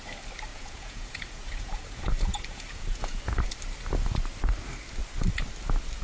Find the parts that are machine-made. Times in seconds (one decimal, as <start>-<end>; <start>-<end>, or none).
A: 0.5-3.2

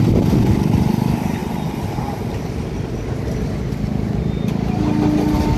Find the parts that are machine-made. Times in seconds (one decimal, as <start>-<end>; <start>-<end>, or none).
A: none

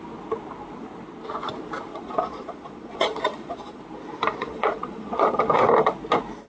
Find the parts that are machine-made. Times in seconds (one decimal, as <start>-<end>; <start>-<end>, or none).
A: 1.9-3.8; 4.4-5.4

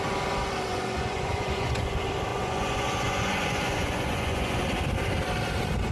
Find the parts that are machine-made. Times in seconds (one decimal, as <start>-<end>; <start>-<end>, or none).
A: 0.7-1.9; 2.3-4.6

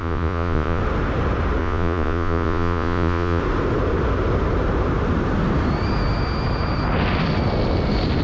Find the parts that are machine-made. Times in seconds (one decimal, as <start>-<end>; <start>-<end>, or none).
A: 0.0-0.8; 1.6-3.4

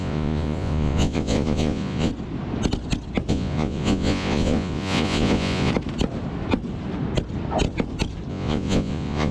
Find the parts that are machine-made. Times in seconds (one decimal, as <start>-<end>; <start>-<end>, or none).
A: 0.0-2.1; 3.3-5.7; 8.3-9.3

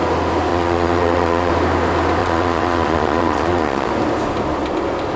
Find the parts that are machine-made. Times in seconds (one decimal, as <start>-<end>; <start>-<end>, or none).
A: 0.5-1.5; 2.2-3.9

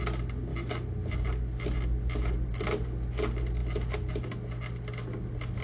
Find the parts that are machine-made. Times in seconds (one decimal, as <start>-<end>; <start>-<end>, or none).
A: none